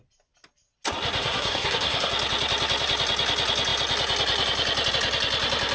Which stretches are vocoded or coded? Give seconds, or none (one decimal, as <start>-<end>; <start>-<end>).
1.2-2.1

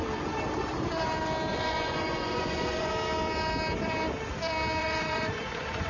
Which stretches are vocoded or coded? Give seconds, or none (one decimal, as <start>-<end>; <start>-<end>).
1.5-2.9; 4.8-5.9

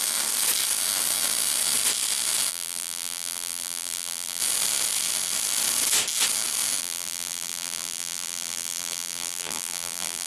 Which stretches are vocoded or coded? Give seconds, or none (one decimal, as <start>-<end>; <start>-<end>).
2.5-4.4; 6.8-10.3

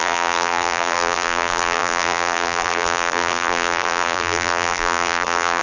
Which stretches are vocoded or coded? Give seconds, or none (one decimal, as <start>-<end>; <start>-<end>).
0.0-5.6

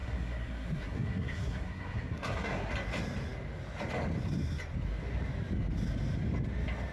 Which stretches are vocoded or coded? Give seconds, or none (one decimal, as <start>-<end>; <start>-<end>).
0.0-2.7